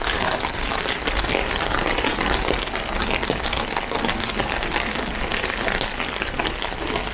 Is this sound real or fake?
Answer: real